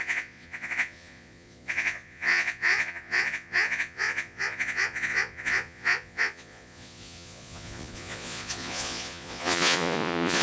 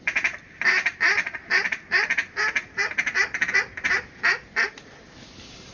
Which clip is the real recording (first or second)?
second